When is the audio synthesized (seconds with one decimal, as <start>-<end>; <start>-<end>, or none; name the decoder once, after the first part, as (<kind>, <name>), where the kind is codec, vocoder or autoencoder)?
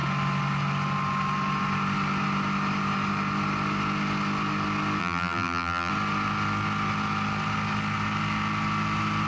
5.0-5.9 (vocoder, BigVGAN v2)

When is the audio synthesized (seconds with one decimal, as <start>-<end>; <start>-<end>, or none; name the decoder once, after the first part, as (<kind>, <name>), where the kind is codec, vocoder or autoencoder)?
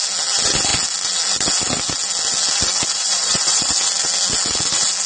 2.9-3.7 (vocoder, Vocos)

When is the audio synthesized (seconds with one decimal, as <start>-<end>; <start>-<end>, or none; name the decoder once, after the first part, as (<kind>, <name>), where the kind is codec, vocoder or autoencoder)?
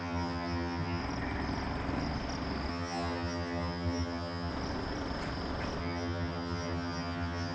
0.0-1.0 (vocoder, HiFi-GAN); 2.7-4.5; 5.8-7.5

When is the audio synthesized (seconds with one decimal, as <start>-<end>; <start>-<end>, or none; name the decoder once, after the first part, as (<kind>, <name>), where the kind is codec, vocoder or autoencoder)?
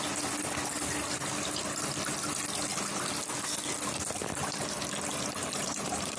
5.4-6.2 (vocoder, BigVGAN v2)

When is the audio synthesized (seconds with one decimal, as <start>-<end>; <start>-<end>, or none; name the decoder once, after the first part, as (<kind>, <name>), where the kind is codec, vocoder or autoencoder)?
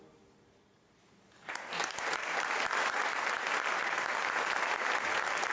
2.2-5.5 (vocoder, BigVGAN v2)